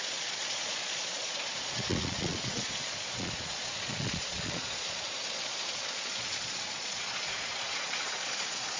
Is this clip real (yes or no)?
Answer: no